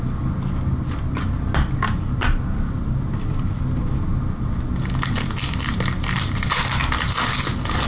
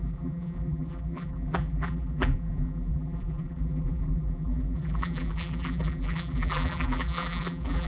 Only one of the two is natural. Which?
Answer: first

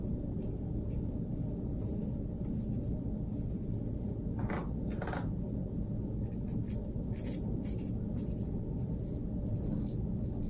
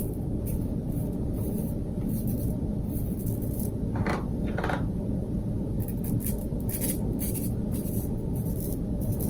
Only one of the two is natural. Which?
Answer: first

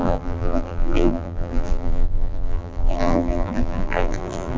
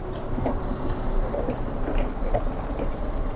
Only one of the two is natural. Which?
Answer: second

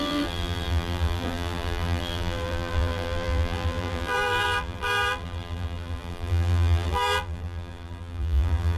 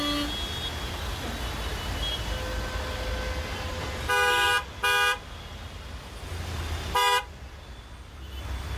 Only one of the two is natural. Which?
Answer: second